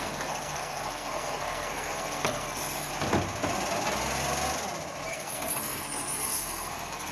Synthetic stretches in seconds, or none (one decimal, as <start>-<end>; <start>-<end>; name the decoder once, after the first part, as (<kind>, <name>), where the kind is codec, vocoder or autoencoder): 0.0-2.9 (codec, SNAC); 5.1-7.1